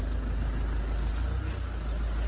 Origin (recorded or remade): recorded